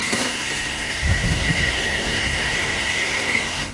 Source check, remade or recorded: remade